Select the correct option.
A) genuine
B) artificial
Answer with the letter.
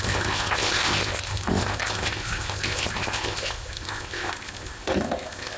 B